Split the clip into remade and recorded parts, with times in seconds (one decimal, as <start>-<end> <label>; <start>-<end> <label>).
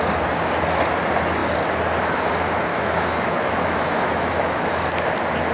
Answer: 0.0-2.7 recorded; 2.7-4.7 remade; 4.7-5.5 recorded